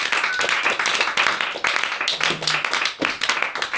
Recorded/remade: recorded